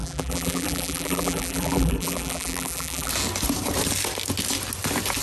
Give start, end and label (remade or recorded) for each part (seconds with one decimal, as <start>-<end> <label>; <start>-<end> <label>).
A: 0.0-3.1 remade; 3.1-5.2 recorded